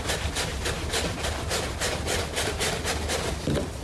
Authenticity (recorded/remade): recorded